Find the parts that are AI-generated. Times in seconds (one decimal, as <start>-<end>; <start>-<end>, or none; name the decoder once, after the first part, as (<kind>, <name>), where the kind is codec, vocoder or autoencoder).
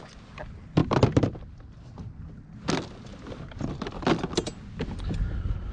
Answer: none